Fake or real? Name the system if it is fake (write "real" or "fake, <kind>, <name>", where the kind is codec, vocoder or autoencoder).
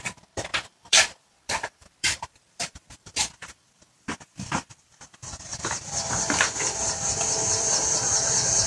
fake, vocoder, BigVGAN v2